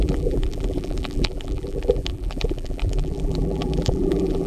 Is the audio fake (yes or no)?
yes